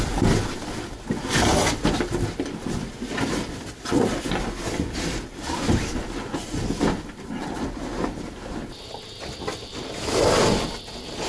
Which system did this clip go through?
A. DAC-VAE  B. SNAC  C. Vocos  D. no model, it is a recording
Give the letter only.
D